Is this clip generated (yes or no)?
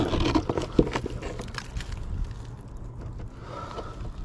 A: no